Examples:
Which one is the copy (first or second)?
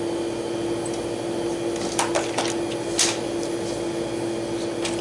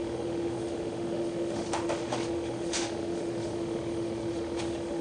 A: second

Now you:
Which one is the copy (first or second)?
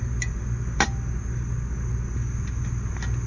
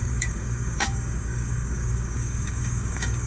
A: second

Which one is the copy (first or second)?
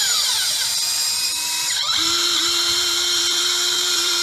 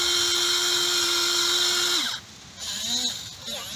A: first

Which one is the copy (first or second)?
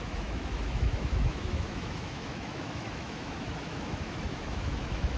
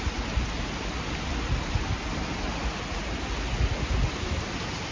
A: first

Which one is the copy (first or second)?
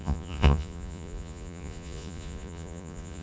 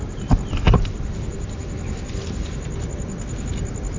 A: first